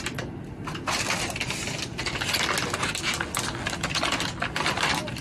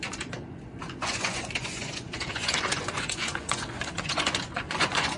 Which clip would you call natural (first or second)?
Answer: first